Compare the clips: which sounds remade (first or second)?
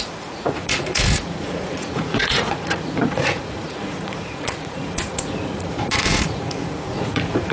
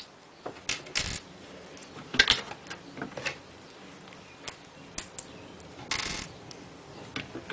first